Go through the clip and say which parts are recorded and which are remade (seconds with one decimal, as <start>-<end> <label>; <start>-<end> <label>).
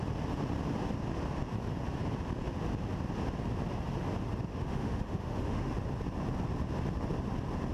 0.0-4.5 recorded; 4.5-5.7 remade; 5.7-7.7 recorded